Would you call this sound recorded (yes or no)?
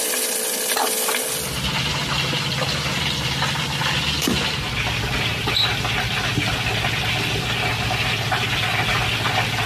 yes